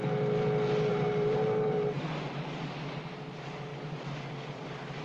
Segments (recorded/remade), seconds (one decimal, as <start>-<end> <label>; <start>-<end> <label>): 0.0-0.9 recorded; 0.9-2.4 remade; 2.4-5.0 recorded